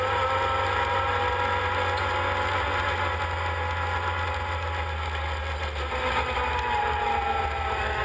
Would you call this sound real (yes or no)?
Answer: yes